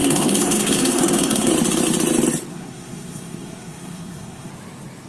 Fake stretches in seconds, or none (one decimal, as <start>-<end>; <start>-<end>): 0.0-1.5; 2.5-4.5